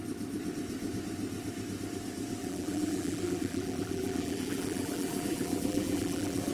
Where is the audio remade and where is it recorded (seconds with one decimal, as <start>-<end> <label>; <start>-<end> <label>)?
0.0-2.4 recorded; 2.4-6.5 remade